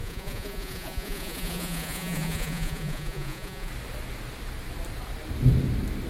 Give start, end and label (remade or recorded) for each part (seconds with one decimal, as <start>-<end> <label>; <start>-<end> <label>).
0.0-3.7 remade; 3.7-6.1 recorded